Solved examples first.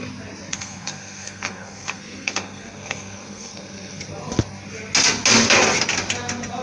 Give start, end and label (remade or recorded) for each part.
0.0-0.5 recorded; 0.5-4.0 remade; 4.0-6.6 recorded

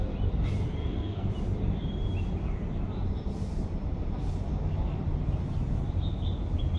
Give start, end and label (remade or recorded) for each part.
0.0-0.8 recorded; 0.8-1.3 remade; 1.3-6.8 recorded

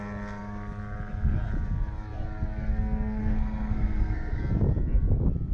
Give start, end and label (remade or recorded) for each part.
0.0-3.2 recorded; 3.2-4.4 remade; 4.4-5.5 recorded